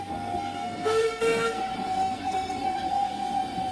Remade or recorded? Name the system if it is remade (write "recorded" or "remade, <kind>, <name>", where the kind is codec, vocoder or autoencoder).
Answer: remade, codec, SNAC